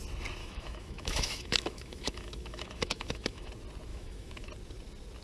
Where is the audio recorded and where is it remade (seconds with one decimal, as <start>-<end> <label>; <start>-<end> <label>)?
0.0-0.4 recorded; 0.4-3.5 remade; 3.5-3.9 recorded; 3.9-4.5 remade; 4.5-5.2 recorded